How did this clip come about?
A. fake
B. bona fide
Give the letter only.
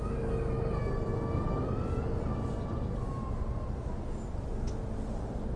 B